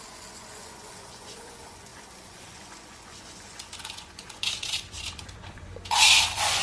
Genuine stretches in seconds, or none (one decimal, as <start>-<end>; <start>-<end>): none